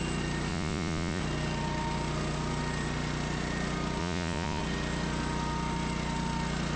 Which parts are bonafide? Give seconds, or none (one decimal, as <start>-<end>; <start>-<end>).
0.0-0.5; 1.2-4.0; 4.6-6.8